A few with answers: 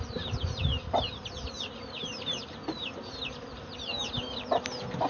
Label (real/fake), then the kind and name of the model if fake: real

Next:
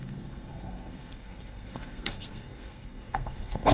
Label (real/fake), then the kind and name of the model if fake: fake, codec, SNAC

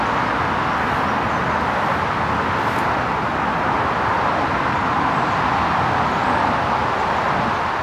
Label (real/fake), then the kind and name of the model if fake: real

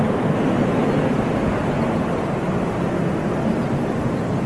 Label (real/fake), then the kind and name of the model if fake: real